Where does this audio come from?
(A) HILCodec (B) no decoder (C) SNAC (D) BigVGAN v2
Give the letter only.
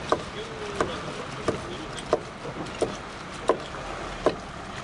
B